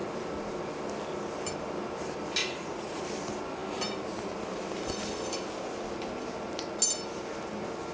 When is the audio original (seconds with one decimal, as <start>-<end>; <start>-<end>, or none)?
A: 0.0-2.4; 3.0-7.9